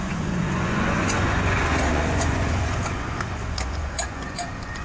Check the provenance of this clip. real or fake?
fake